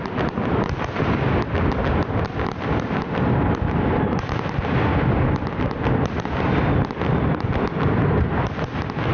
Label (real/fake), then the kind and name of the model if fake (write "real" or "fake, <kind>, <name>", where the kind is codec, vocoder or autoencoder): real